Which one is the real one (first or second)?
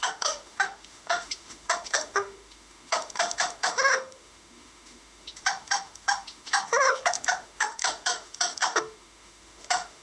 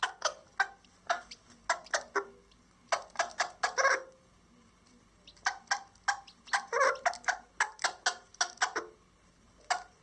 second